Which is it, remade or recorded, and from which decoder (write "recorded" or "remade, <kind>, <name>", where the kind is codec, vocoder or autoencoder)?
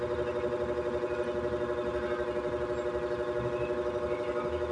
recorded